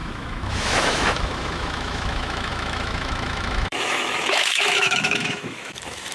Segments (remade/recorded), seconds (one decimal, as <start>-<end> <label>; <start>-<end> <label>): 0.0-6.1 remade